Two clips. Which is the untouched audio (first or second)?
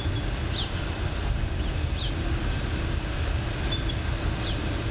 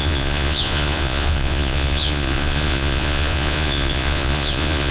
first